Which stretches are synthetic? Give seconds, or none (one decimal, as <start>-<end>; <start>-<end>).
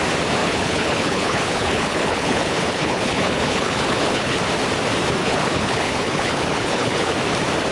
0.4-4.4; 5.2-7.1